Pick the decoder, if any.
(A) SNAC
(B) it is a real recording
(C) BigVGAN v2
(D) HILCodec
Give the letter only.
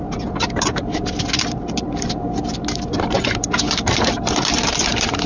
C